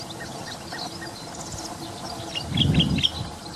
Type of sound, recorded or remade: recorded